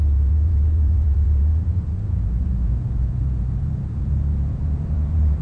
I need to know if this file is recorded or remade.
remade